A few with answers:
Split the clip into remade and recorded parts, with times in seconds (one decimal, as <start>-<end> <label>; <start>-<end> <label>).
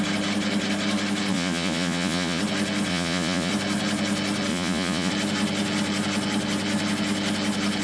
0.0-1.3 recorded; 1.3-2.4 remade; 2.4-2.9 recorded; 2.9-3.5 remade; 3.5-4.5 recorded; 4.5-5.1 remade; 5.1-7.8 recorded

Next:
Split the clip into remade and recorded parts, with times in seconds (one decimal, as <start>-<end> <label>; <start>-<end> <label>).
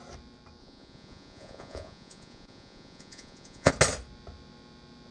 0.0-0.6 recorded; 0.6-3.7 remade; 3.7-5.1 recorded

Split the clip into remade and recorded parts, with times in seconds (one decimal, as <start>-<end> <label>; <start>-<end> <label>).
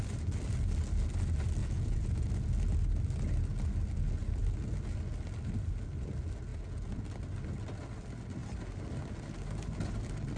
0.0-1.6 recorded; 1.6-2.3 remade; 2.3-6.5 recorded; 6.5-7.0 remade; 7.0-10.4 recorded